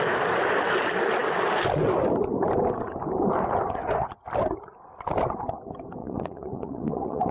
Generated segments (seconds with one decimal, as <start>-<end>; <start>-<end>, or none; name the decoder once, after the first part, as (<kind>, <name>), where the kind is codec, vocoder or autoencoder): 6.0-7.3 (vocoder, Vocos)